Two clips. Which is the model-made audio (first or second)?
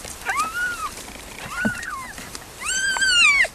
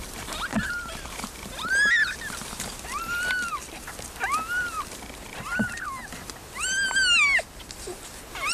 first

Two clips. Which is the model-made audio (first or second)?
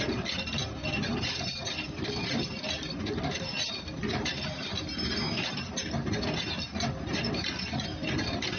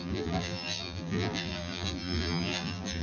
second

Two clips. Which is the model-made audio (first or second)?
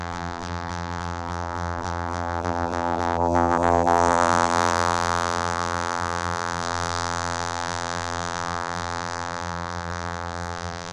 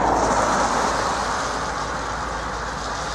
first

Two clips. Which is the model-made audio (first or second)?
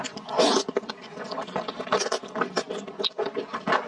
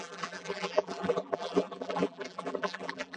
second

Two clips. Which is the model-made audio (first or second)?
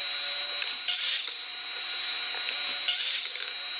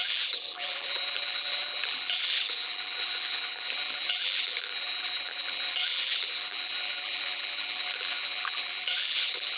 second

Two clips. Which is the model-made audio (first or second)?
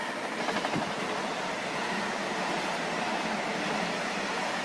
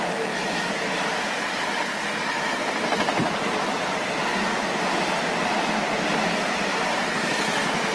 first